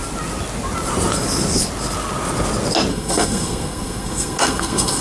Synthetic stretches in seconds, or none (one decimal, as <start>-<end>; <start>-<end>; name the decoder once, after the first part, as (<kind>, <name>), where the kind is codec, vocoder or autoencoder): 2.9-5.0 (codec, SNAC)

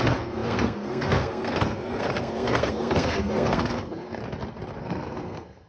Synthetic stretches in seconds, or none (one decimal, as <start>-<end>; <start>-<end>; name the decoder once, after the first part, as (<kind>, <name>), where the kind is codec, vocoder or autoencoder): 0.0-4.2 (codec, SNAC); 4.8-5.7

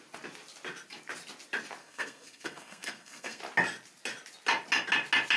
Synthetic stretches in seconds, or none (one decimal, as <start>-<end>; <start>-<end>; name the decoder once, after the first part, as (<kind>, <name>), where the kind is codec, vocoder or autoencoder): 1.8-3.4 (codec, SNAC)

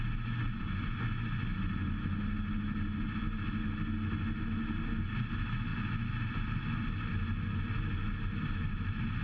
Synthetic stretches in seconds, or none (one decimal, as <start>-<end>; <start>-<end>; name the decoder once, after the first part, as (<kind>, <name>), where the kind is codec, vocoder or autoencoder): none

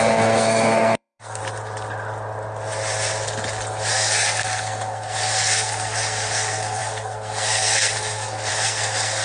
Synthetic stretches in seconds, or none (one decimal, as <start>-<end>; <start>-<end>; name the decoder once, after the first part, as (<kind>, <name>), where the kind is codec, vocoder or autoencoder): 0.0-1.4 (codec, SNAC); 3.9-9.2